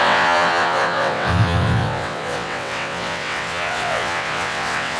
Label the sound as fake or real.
fake